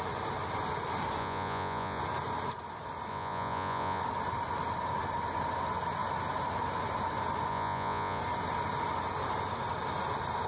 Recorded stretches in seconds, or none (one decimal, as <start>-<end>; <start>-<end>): 0.0-1.2; 2.0-3.1; 4.0-7.5; 8.2-10.5